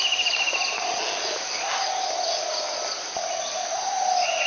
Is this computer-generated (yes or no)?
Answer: no